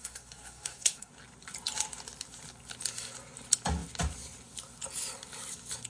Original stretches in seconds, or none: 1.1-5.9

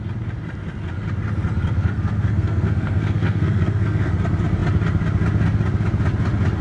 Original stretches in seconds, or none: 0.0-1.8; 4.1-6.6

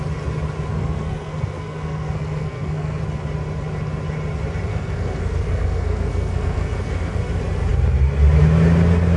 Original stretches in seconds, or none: 0.0-0.7; 3.0-4.7; 7.3-9.2

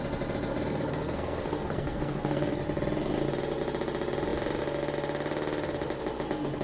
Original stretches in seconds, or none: 0.0-0.7; 2.6-6.6